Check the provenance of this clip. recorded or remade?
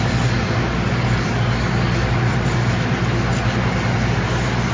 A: recorded